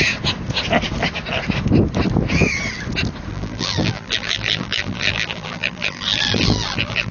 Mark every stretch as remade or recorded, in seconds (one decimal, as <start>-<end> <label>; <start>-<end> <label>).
0.0-3.3 recorded; 3.3-7.1 remade